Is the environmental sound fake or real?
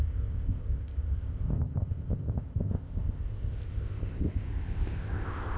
fake